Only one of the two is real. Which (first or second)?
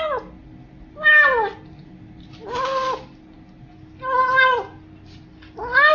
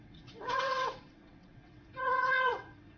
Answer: first